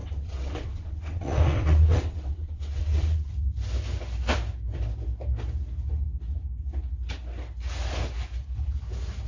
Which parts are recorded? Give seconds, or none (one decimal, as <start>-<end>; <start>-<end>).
3.3-9.3